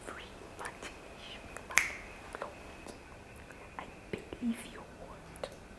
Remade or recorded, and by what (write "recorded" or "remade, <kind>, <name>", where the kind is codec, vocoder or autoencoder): recorded